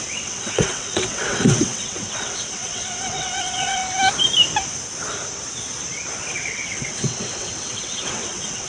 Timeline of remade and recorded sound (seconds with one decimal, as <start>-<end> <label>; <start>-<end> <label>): 0.0-3.8 remade; 3.8-6.3 recorded; 6.3-8.7 remade